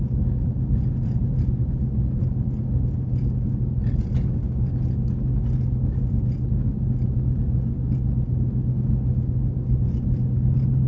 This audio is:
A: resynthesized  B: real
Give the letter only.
B